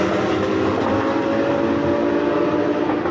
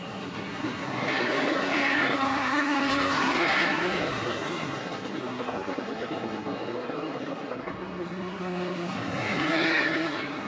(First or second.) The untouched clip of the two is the first